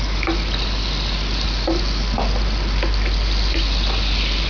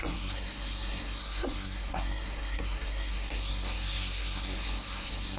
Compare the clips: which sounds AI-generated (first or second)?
second